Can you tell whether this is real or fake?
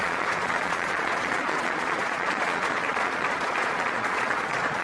fake